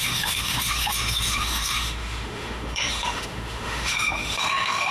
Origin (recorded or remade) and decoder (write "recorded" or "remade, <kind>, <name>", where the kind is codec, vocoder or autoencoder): remade, autoencoder, DAC-VAE